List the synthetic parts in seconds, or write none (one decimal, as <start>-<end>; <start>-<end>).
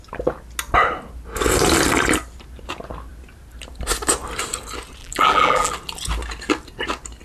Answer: 5.0-5.7